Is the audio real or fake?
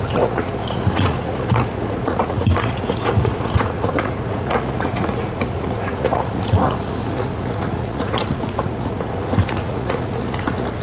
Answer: fake